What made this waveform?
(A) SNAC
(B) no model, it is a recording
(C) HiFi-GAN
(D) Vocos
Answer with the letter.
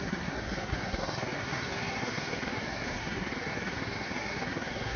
A